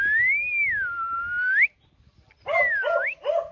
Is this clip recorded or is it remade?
recorded